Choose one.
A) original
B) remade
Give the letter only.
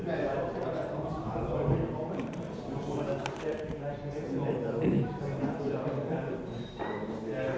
B